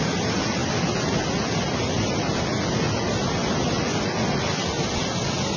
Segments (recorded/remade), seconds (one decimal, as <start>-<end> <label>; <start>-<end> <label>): 0.0-5.6 recorded